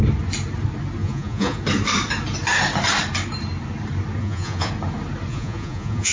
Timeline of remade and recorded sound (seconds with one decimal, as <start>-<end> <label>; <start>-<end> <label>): 0.0-1.0 recorded; 1.0-1.6 remade; 1.6-4.2 recorded; 4.2-4.7 remade; 4.7-5.3 recorded; 5.3-6.1 remade